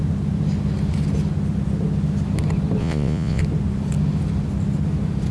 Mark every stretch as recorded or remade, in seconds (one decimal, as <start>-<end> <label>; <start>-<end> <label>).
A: 0.0-2.8 recorded; 2.8-3.4 remade; 3.4-5.3 recorded

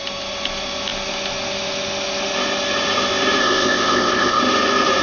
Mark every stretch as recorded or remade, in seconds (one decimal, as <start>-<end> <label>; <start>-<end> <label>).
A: 0.0-3.4 recorded; 3.4-4.4 remade; 4.4-5.0 recorded

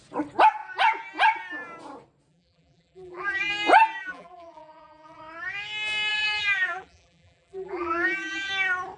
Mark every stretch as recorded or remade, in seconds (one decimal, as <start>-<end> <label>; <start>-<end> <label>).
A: 0.0-2.3 recorded; 2.3-3.5 remade; 3.5-4.0 recorded; 4.0-5.2 remade; 5.2-6.1 recorded; 6.1-8.5 remade; 8.5-9.0 recorded

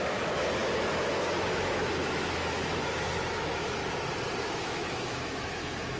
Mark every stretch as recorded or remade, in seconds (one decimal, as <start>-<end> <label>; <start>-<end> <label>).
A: 0.0-3.8 remade; 3.8-4.4 recorded; 4.4-6.0 remade

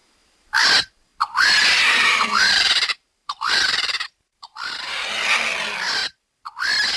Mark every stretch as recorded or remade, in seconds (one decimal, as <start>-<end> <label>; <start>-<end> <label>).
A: 0.0-0.6 remade; 0.6-1.1 recorded; 1.1-5.1 remade; 5.1-6.0 recorded; 6.0-6.5 remade; 6.5-7.0 recorded

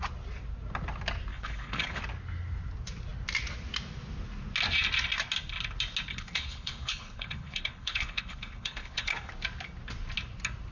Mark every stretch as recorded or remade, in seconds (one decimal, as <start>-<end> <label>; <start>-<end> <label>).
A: 0.0-1.3 recorded; 1.3-2.0 remade; 2.0-6.1 recorded; 6.1-9.3 remade; 9.3-10.7 recorded

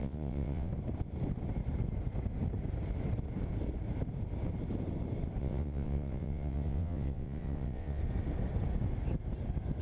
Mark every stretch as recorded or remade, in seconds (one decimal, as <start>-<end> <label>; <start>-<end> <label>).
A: 0.0-0.7 remade; 0.7-5.4 recorded; 5.4-8.0 remade; 8.0-9.8 recorded

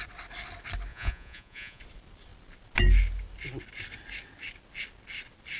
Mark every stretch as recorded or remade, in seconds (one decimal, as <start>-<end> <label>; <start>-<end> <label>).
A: 0.0-0.9 recorded; 0.9-1.8 remade; 1.8-5.6 recorded